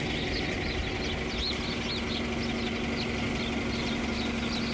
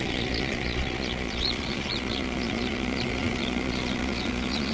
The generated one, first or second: second